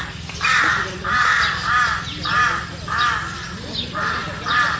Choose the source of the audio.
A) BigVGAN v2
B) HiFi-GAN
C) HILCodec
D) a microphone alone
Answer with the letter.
D